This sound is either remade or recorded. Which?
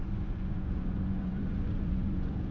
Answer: remade